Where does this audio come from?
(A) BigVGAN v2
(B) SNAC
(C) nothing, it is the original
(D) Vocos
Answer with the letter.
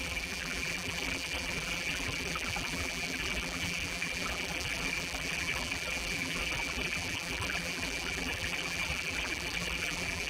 A